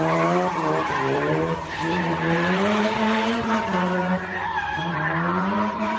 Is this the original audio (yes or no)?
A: no